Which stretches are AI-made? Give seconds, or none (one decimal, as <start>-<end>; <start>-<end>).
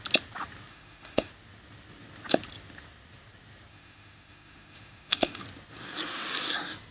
0.7-1.3; 3.7-5.4